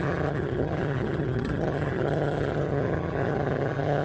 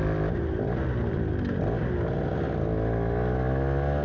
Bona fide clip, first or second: second